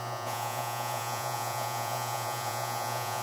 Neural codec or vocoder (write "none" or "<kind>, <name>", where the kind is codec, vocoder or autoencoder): vocoder, Vocos